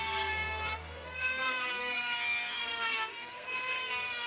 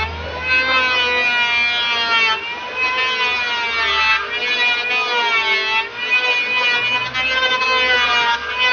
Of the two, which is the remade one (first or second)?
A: first